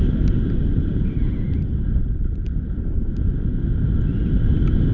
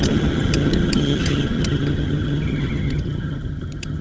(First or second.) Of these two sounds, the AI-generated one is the second